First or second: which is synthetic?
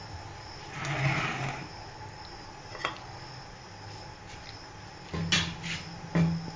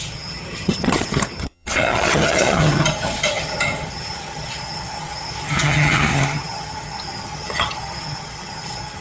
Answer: second